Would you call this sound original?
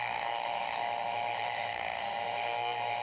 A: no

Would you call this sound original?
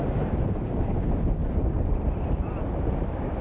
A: yes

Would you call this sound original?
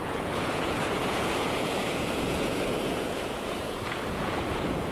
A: no